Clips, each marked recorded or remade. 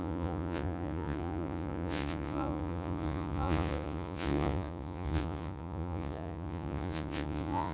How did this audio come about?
remade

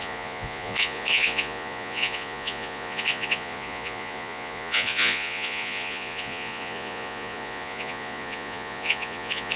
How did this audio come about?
remade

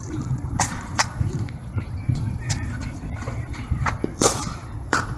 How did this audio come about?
remade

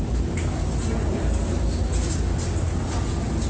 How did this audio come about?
recorded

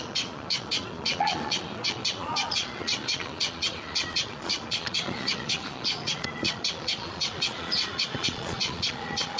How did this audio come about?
remade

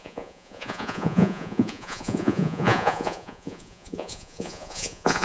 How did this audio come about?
remade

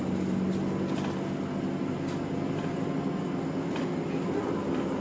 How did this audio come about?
recorded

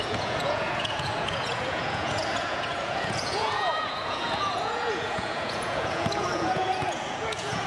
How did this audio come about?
remade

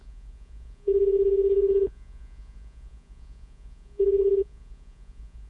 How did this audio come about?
remade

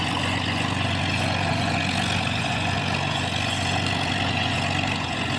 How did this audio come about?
remade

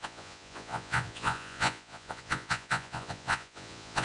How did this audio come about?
remade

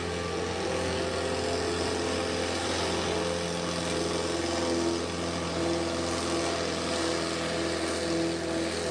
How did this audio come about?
recorded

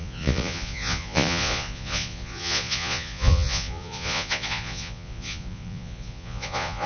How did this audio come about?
remade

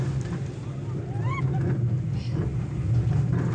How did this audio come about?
recorded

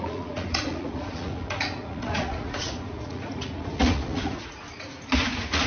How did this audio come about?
remade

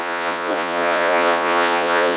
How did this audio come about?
remade